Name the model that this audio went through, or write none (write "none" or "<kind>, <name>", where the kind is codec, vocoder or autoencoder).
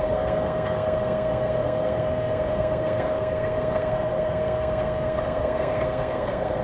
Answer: codec, SNAC